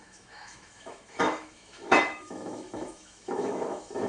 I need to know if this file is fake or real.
fake